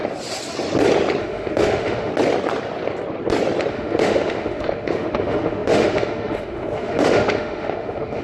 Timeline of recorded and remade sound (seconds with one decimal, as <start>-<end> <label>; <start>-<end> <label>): 0.0-1.2 recorded; 1.2-2.1 remade; 2.1-3.7 recorded; 3.7-8.2 remade